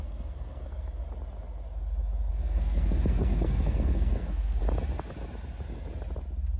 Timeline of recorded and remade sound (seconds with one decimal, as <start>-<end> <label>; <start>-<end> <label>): 0.0-1.0 remade; 1.0-2.3 recorded; 2.3-4.6 remade; 4.6-6.6 recorded